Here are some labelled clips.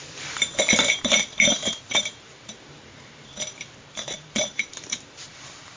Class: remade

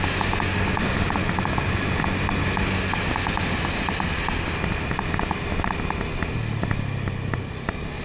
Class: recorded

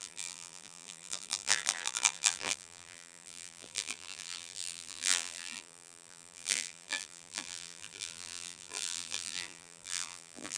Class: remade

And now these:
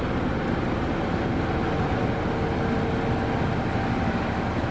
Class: recorded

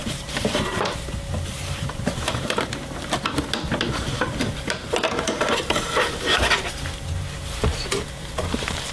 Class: remade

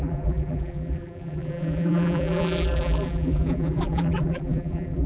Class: remade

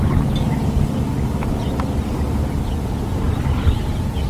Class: recorded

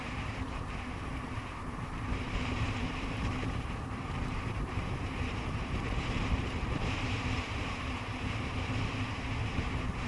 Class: remade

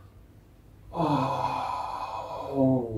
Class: recorded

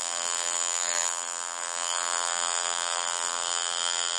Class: remade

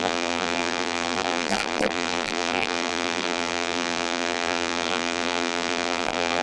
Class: remade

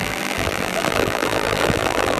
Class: remade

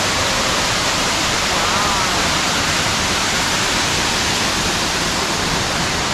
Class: remade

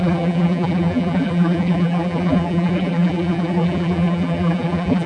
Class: remade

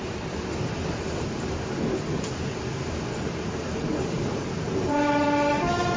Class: remade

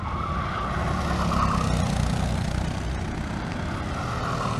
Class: recorded